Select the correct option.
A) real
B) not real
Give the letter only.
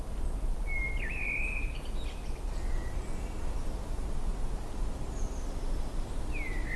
A